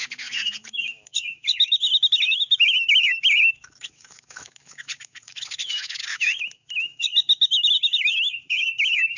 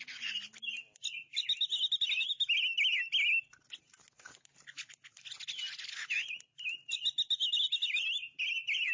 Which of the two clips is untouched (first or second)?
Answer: second